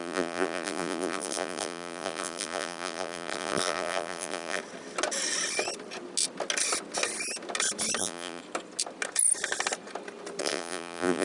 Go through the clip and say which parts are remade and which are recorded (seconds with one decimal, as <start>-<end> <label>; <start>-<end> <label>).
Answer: 0.0-4.6 remade; 4.6-8.0 recorded; 8.0-8.4 remade; 8.4-10.4 recorded; 10.4-11.2 remade